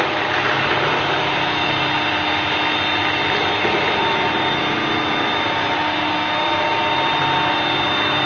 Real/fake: real